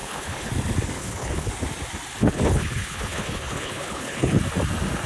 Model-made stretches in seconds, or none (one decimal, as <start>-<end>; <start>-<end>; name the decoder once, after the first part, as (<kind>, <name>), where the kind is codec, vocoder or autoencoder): 0.0-0.5 (codec, HILCodec); 1.0-1.5; 2.2-4.4